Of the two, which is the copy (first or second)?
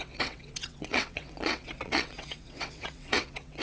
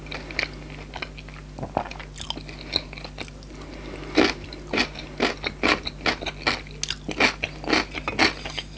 first